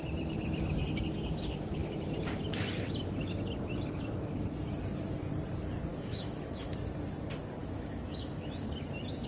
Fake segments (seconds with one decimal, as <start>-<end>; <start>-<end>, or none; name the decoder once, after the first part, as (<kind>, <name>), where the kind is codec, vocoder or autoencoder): 5.9-6.7 (autoencoder, DAC-VAE); 7.6-8.7